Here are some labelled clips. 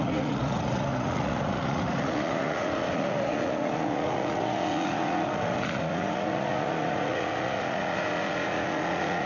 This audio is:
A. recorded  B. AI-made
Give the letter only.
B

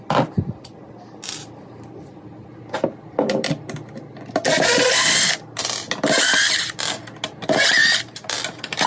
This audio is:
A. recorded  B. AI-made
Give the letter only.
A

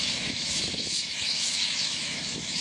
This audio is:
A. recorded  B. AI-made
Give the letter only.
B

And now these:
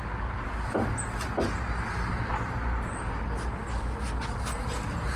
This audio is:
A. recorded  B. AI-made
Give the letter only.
A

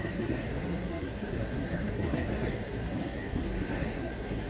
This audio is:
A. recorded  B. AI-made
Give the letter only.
B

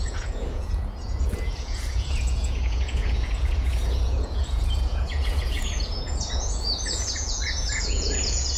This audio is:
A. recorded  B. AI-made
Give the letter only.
B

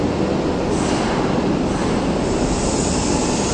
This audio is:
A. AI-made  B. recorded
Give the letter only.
B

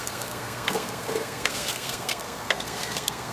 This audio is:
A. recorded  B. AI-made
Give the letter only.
B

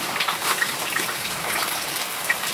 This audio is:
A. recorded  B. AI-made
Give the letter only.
B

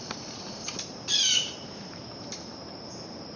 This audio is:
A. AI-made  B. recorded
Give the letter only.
A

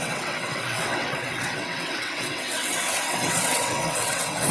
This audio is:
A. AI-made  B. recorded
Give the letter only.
A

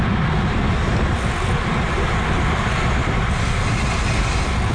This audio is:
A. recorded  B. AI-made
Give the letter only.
A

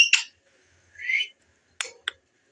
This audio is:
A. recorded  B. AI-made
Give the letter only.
A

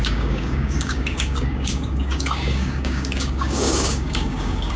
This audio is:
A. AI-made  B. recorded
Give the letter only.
A